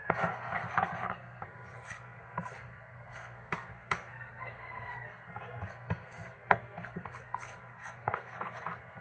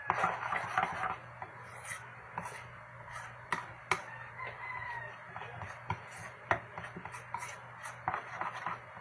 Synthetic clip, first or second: first